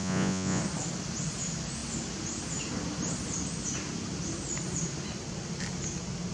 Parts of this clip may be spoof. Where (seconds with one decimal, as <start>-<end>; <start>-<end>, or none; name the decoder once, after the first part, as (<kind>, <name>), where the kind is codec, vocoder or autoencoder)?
0.0-0.6 (vocoder, Vocos)